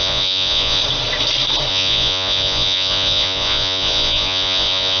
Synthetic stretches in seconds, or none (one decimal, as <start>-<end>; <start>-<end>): 0.0-0.8; 1.7-5.0